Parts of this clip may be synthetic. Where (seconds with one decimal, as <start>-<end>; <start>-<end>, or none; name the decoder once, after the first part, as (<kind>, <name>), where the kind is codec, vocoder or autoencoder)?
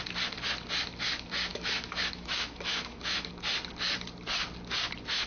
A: 1.5-3.3 (autoencoder, DAC-VAE)